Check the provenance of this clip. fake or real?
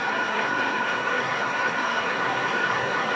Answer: fake